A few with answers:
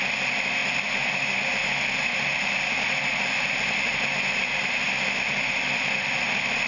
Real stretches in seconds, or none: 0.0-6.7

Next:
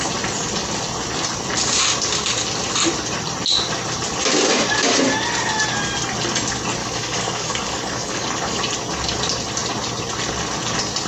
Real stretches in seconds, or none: 0.0-6.8; 8.6-11.1

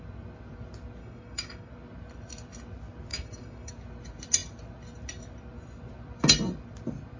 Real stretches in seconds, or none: 0.0-1.0; 1.7-3.1; 3.7-7.2